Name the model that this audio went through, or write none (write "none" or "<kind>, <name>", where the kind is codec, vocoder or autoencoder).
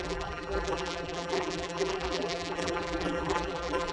vocoder, BigVGAN v2